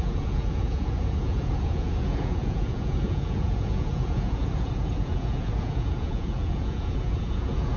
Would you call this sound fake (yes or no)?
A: yes